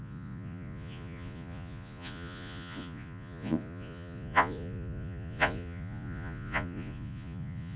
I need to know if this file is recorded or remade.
remade